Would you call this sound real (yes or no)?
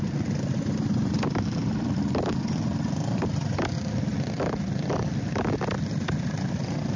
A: yes